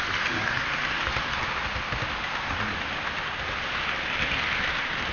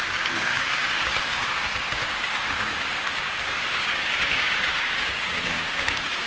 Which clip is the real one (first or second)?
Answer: first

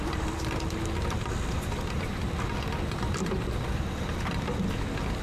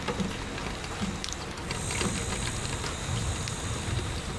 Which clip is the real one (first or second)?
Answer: second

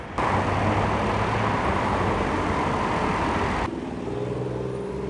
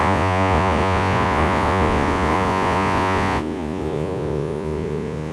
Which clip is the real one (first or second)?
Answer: first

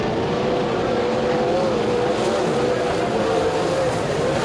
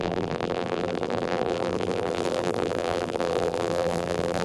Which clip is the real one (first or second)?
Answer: first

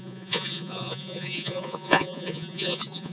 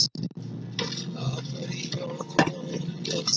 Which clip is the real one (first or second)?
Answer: second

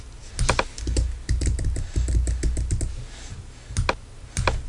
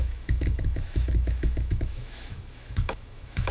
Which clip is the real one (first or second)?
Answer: first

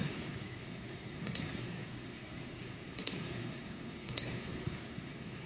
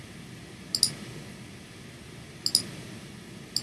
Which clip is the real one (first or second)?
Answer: second